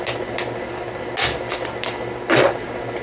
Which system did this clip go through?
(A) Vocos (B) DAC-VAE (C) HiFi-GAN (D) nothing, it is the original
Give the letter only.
D